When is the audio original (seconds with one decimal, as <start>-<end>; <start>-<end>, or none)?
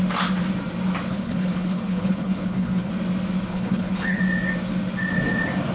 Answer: 0.0-1.1; 2.9-3.5; 4.2-5.7